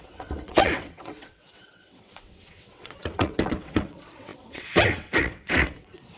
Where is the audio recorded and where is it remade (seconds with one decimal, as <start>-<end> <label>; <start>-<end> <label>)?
0.0-6.2 remade